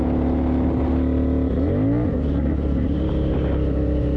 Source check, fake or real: real